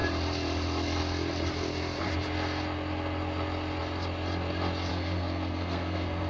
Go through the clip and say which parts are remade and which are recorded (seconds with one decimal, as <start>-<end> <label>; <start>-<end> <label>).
0.0-4.9 recorded; 4.9-6.3 remade